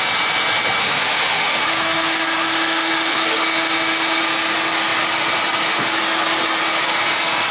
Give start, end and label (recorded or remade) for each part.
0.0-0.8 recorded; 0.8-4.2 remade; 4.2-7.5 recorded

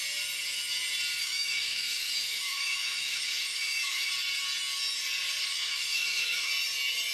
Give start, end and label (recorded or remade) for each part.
0.0-1.2 recorded; 1.2-4.1 remade; 4.1-5.5 recorded; 5.5-6.5 remade; 6.5-7.1 recorded

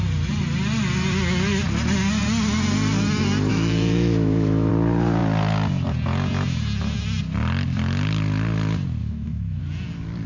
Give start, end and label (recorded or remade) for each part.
0.0-3.5 recorded; 3.5-4.7 remade; 4.7-9.0 recorded; 9.0-9.6 remade; 9.6-10.3 recorded